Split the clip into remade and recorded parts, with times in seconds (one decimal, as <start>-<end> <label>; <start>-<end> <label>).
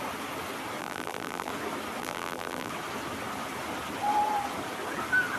0.0-0.8 recorded; 0.8-1.5 remade; 1.5-2.0 recorded; 2.0-2.7 remade; 2.7-5.4 recorded